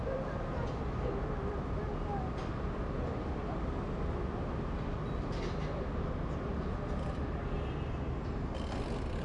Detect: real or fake real